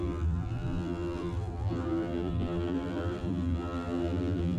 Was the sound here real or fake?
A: fake